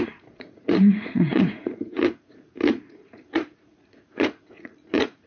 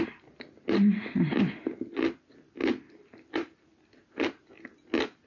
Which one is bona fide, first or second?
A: second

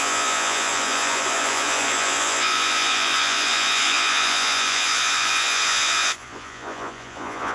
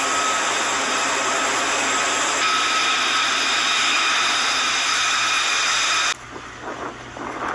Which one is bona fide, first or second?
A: second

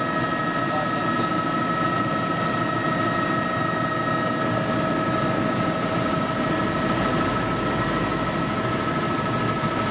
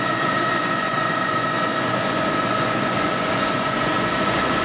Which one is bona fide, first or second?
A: first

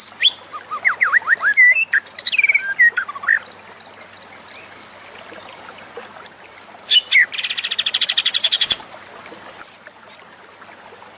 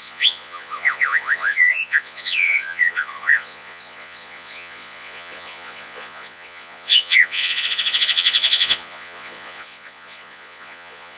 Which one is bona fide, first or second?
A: first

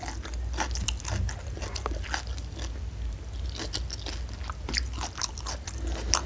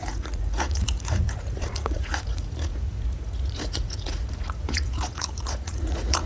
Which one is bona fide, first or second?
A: first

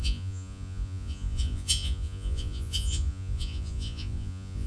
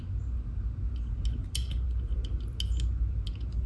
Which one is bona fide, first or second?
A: second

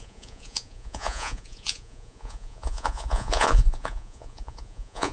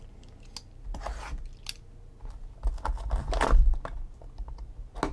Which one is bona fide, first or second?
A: second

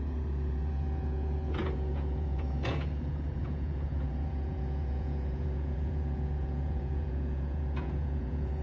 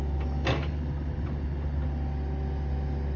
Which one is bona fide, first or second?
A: second